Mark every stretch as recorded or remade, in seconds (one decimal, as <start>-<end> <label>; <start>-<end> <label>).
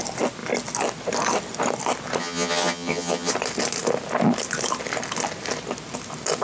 0.0-2.2 recorded; 2.2-3.3 remade; 3.3-6.4 recorded